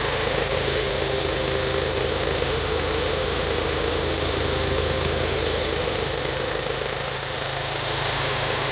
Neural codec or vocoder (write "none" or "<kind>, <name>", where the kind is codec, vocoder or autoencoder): autoencoder, DAC-VAE